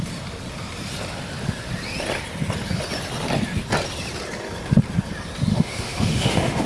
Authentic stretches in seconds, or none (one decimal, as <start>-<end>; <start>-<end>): 0.0-5.5